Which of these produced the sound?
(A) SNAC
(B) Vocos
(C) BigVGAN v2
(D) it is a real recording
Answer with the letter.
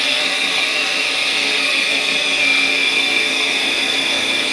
A